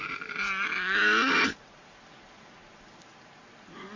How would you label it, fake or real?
real